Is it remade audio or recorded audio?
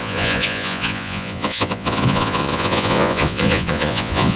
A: remade